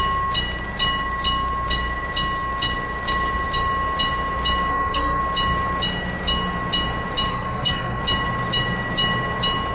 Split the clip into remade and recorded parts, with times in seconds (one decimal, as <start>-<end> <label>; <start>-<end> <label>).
0.0-4.7 recorded; 4.7-5.2 remade; 5.2-7.3 recorded; 7.3-8.0 remade; 8.0-9.7 recorded